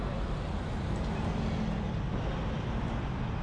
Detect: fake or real real